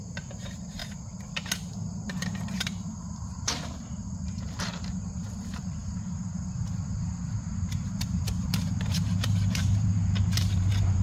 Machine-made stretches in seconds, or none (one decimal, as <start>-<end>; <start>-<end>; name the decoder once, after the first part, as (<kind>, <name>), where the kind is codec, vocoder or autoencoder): 0.0-0.8 (vocoder, BigVGAN v2); 1.7-11.0